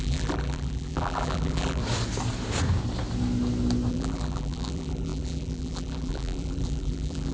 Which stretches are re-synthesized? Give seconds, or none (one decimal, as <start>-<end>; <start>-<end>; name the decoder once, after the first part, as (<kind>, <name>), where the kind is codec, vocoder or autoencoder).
0.0-1.8 (vocoder, BigVGAN v2); 3.9-7.3